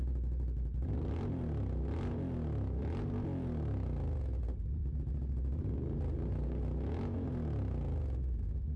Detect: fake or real real